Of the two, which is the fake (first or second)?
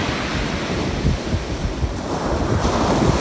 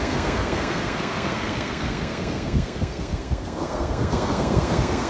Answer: second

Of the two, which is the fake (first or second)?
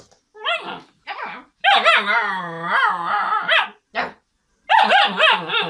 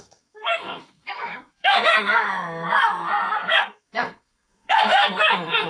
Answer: second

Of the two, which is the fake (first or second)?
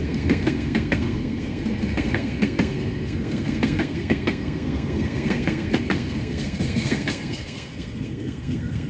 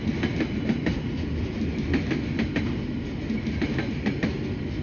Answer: first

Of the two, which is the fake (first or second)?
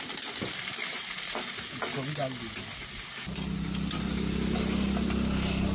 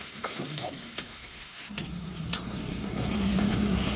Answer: second